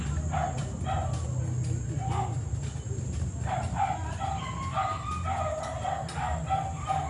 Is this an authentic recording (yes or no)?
yes